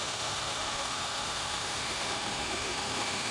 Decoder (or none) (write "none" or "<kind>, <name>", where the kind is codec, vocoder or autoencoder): autoencoder, DAC-VAE